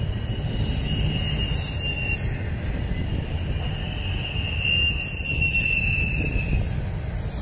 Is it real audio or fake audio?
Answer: real